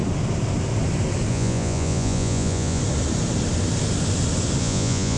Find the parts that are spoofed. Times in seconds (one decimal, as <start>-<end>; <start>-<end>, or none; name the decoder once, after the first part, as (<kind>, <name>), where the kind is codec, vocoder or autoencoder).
1.3-2.8 (vocoder, Vocos); 4.6-5.2